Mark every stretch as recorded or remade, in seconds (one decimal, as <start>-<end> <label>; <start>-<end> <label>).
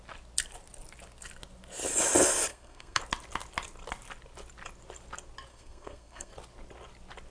0.0-2.5 recorded; 2.5-3.0 remade; 3.0-5.5 recorded; 5.5-6.3 remade; 6.3-7.3 recorded